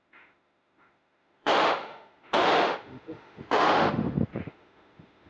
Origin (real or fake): fake